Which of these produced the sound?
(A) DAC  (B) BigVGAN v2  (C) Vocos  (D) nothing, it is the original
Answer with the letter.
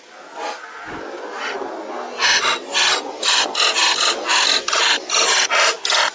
D